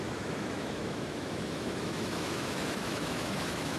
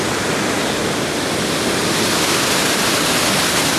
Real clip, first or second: second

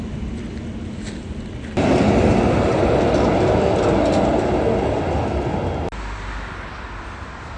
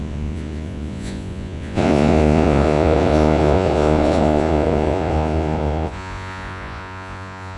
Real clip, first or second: first